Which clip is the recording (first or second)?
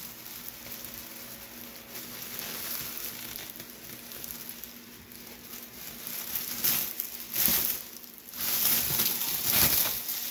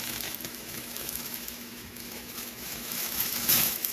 first